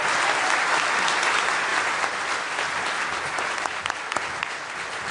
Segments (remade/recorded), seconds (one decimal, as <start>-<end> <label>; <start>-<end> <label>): 0.0-5.1 recorded